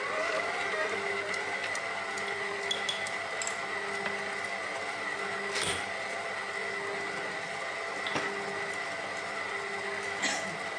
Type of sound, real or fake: real